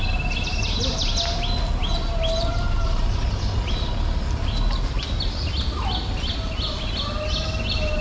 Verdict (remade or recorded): recorded